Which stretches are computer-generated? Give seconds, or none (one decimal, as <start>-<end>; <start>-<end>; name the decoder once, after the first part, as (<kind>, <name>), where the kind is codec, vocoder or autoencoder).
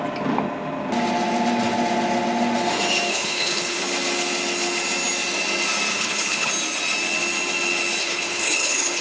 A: 3.1-3.8 (codec, HILCodec); 5.9-6.5; 8.0-9.0